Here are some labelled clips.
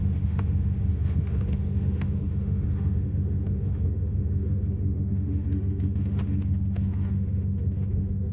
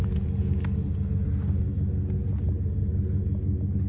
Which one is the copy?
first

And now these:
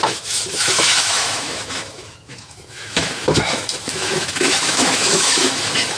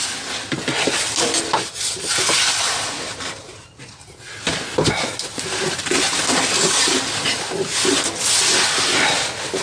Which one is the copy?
first